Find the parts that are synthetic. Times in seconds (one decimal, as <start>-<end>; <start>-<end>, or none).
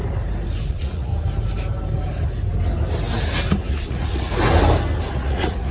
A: 0.7-1.1; 3.7-4.3; 5.1-5.7